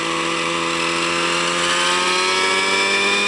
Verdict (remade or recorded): recorded